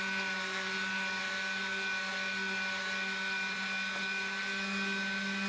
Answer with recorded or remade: recorded